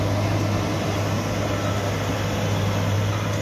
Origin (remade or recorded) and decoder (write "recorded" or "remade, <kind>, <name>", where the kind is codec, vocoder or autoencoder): recorded